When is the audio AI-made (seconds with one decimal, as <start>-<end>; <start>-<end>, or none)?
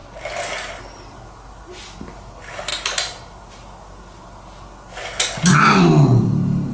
none